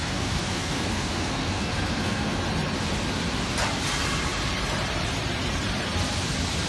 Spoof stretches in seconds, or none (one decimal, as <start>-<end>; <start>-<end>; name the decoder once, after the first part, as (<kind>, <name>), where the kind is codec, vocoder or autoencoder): 0.0-2.4 (codec, SNAC)

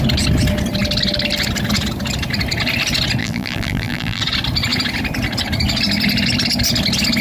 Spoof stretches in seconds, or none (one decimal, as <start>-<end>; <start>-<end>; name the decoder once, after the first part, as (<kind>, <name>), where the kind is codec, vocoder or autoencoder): 3.2-4.2 (vocoder, BigVGAN v2)

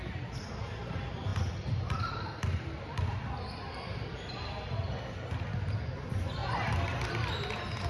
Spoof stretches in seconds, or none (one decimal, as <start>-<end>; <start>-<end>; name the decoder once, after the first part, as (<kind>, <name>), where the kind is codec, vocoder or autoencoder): 0.0-0.6 (vocoder, BigVGAN v2); 1.3-4.5; 6.4-7.1

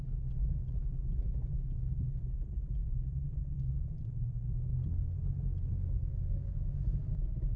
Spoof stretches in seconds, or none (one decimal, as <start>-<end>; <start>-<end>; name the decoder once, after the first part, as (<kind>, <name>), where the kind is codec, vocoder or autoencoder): 1.5-2.2 (vocoder, BigVGAN v2); 2.8-4.2

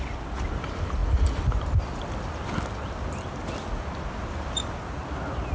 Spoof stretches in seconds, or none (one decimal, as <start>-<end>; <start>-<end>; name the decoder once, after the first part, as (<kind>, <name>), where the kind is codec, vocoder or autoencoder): none

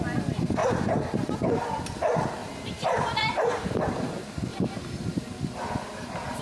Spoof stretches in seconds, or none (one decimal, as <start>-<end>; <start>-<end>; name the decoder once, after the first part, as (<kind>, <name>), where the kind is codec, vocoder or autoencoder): 0.6-1.3 (vocoder, BigVGAN v2); 2.4-3.8; 4.5-5.1; 5.9-6.4